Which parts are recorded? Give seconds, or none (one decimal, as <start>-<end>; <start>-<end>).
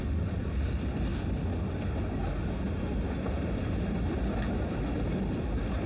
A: 1.1-3.2